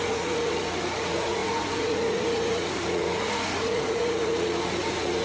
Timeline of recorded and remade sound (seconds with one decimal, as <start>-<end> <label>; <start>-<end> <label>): 0.0-5.2 remade